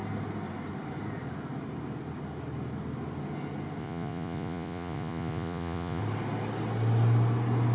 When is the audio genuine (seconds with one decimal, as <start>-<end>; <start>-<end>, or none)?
0.0-3.8; 6.0-7.7